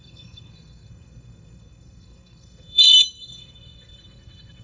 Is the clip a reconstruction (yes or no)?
yes